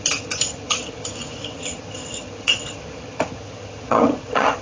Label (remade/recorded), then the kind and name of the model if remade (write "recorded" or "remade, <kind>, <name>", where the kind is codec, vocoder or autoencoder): remade, vocoder, HiFi-GAN